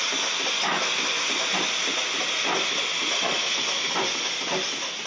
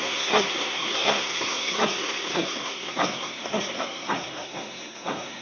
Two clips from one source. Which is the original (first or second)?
first